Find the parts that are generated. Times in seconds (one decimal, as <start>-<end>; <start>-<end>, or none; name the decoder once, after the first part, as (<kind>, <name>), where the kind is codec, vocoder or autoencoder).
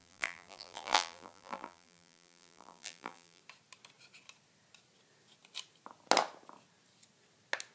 0.0-3.4 (vocoder, BigVGAN v2)